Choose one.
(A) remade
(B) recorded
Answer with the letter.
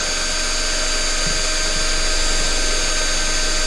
B